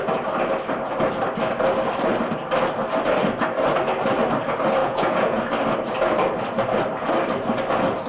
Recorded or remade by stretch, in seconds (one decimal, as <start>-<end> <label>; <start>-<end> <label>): 0.0-4.8 recorded; 4.8-5.4 remade; 5.4-8.1 recorded